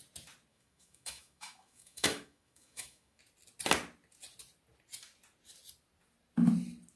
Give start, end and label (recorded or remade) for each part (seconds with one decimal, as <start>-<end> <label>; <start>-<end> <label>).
0.0-0.5 recorded; 0.5-3.2 remade; 3.2-7.0 recorded